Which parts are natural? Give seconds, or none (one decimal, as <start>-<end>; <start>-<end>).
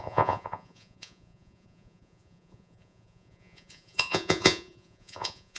none